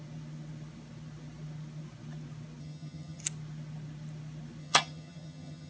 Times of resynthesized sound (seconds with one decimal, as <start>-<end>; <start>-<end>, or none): 2.6-3.2; 4.6-5.7